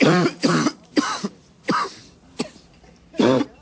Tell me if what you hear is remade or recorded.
remade